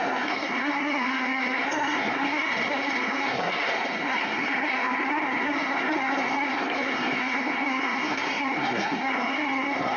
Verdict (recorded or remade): remade